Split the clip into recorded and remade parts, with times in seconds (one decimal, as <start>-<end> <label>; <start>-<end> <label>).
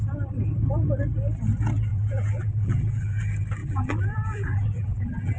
0.0-1.9 recorded; 1.9-3.2 remade; 3.2-3.6 recorded; 3.6-5.4 remade